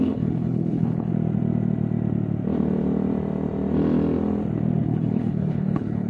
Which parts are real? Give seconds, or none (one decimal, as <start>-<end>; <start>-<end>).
1.1-4.8